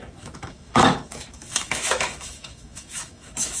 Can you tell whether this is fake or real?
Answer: fake